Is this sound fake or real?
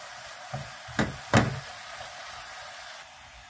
real